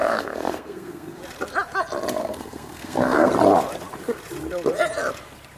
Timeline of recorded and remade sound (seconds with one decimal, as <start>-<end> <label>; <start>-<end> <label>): 0.0-1.2 remade; 1.2-2.2 recorded; 2.2-3.3 remade; 3.3-5.6 recorded